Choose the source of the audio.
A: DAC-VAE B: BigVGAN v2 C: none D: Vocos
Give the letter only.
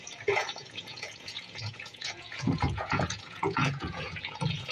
D